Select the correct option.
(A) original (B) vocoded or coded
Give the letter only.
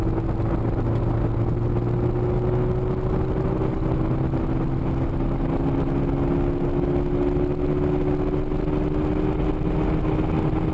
A